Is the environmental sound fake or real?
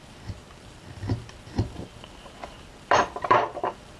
fake